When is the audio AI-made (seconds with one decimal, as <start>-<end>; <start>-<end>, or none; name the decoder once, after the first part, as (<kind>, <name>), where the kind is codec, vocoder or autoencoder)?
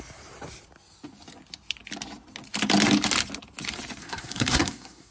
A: 4.0-5.1 (codec, SNAC)